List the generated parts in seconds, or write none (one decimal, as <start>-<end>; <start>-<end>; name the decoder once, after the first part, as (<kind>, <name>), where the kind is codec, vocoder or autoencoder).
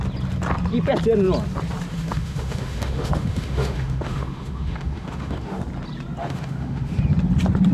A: 1.9-5.6 (autoencoder, DAC-VAE); 6.2-7.0